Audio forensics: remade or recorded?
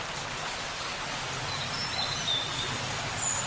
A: recorded